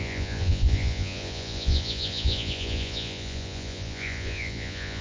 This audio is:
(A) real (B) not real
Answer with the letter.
B